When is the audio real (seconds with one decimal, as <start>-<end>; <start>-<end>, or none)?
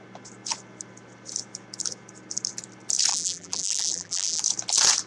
0.0-3.1; 4.4-5.1